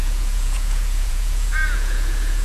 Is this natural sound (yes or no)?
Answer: no